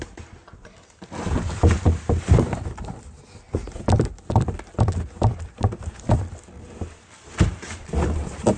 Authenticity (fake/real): real